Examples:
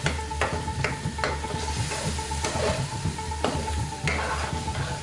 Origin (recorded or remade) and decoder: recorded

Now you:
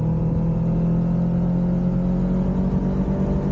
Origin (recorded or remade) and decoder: recorded